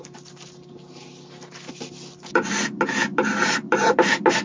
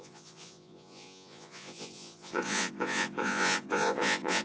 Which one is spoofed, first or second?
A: second